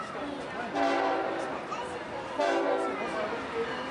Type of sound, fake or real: real